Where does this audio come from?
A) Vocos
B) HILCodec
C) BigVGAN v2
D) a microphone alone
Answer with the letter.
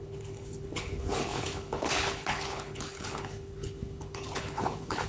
B